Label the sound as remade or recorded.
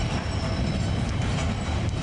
remade